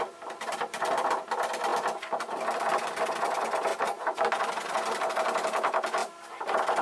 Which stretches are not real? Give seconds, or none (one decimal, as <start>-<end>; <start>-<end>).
0.0-1.7; 2.3-3.7; 5.1-6.8